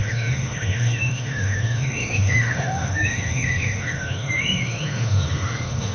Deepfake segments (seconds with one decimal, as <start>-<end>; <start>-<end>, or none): 0.0-5.9